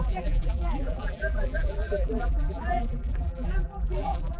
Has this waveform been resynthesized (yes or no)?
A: yes